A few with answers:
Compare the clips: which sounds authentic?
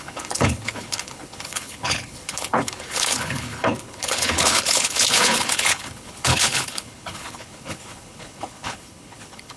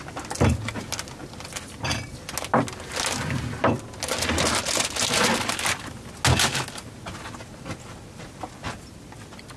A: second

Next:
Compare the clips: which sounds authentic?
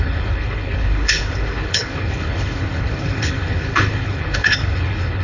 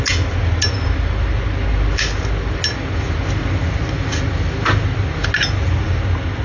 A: second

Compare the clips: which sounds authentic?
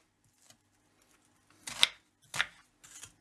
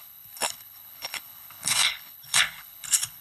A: first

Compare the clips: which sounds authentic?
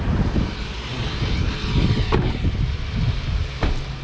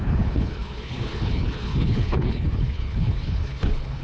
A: first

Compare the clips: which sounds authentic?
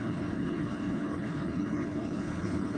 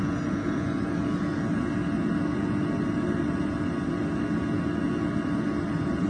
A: second